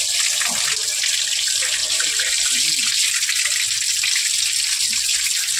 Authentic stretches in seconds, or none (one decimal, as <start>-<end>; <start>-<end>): 0.0-1.8; 2.9-5.6